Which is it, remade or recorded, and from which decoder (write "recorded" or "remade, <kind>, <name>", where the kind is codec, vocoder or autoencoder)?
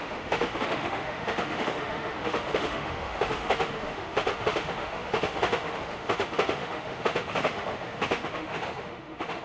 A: remade, autoencoder, DAC-VAE